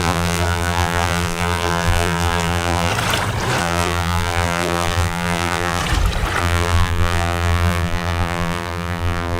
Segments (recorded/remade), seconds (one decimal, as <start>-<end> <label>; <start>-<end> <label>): 0.0-2.9 remade; 2.9-3.6 recorded; 3.6-5.8 remade; 5.8-6.4 recorded; 6.4-9.4 remade